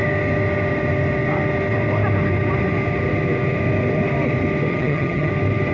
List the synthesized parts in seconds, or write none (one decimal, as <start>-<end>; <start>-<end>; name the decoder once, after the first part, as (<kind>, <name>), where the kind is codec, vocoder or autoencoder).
4.7-5.3 (vocoder, HiFi-GAN)